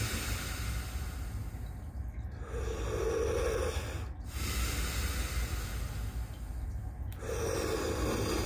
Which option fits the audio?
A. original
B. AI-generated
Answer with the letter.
A